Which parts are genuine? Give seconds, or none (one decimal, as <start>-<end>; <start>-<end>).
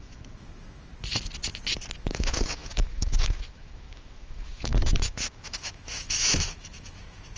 0.9-2.0